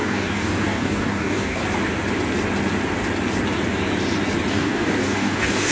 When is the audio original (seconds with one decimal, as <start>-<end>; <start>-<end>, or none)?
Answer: 1.6-4.5